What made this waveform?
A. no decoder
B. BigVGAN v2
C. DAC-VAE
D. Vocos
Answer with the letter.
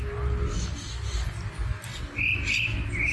A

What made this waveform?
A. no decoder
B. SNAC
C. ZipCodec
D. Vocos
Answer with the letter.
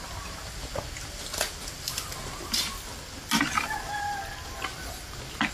A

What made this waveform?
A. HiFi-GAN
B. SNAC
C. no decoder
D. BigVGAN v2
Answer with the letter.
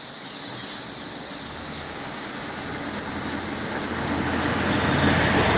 C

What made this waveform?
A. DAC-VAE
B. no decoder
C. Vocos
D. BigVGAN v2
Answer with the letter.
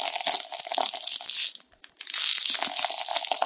B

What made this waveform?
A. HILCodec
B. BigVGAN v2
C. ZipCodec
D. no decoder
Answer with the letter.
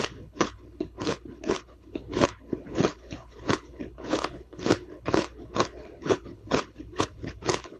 A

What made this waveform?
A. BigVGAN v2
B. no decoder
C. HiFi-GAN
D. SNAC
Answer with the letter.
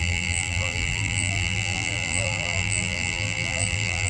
A